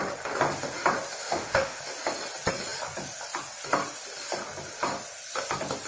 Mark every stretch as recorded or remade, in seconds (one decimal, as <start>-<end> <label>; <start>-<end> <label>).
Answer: 0.0-1.2 recorded; 1.2-1.8 remade; 1.8-5.9 recorded